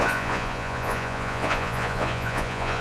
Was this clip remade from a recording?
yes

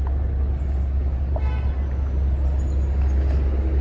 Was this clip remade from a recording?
no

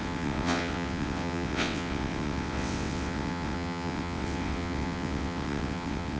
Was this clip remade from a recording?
yes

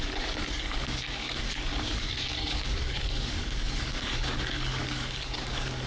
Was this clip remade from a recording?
yes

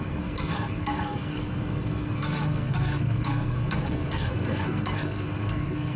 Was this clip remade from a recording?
yes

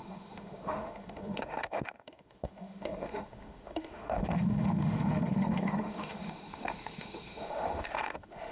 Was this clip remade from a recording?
yes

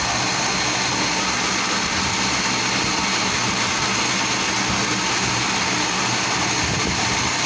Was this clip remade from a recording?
no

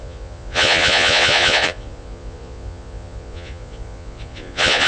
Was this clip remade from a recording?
yes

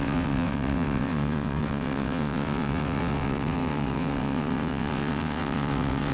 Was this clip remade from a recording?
yes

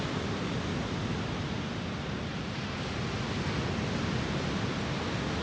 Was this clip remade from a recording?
no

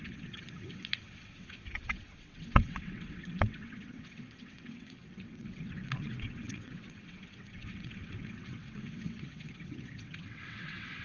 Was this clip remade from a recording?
yes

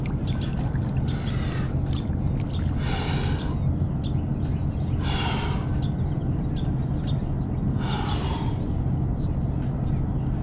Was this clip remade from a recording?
no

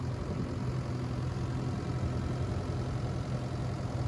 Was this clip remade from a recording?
no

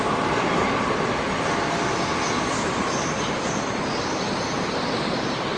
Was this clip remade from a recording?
no